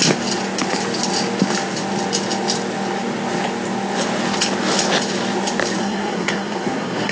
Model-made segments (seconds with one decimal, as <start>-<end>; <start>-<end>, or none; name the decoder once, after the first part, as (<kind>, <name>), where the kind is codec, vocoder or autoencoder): 5.8-7.1 (codec, SNAC)